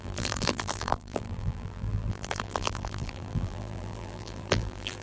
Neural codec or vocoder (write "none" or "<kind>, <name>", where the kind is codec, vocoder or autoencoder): vocoder, BigVGAN v2